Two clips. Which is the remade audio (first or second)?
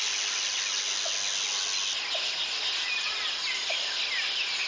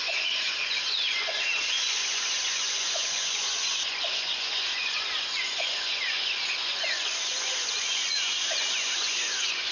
second